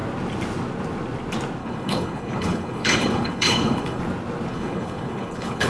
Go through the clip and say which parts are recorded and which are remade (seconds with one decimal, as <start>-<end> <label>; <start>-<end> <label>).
0.0-1.6 recorded; 1.6-4.0 remade; 4.0-4.5 recorded; 4.5-5.7 remade